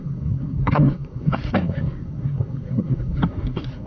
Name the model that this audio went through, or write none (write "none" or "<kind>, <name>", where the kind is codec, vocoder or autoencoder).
codec, SNAC